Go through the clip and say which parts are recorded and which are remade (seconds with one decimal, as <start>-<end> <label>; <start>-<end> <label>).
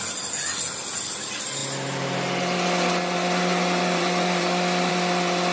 0.0-5.5 recorded